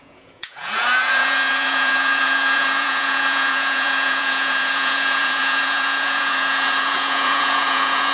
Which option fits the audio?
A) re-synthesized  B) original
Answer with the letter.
A